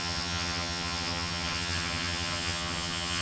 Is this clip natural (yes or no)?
no